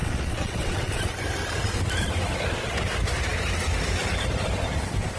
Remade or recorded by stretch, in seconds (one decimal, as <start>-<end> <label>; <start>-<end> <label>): 0.0-1.1 remade; 1.1-5.2 recorded

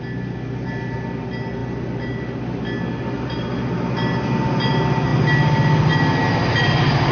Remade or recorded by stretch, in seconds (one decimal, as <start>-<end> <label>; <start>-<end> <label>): 0.0-7.1 recorded

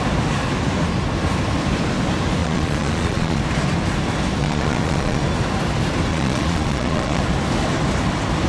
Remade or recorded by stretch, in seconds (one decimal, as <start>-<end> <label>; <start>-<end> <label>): 0.0-2.4 recorded; 2.4-3.4 remade; 3.4-4.4 recorded; 4.4-5.2 remade; 5.2-6.1 recorded; 6.1-7.2 remade; 7.2-8.5 recorded

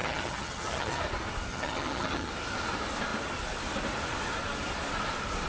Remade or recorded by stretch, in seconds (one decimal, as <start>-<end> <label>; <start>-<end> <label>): 0.0-1.0 remade; 1.0-1.5 recorded; 1.5-2.3 remade; 2.3-5.5 recorded

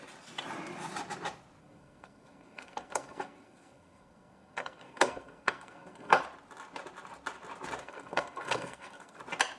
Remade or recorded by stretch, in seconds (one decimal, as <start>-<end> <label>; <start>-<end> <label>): 0.0-1.6 recorded; 1.6-6.2 remade; 6.2-7.8 recorded; 7.8-9.2 remade; 9.2-9.6 recorded

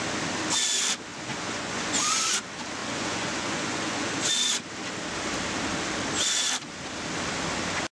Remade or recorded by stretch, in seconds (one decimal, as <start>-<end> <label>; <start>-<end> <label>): 0.0-1.1 recorded; 1.1-2.4 remade; 2.4-2.8 recorded; 2.8-4.1 remade; 4.1-8.0 recorded